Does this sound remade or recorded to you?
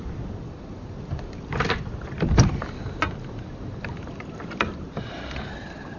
remade